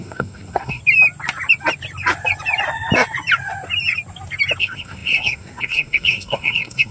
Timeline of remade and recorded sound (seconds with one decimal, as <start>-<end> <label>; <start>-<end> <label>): 0.0-0.8 remade; 0.8-4.6 recorded; 4.6-6.9 remade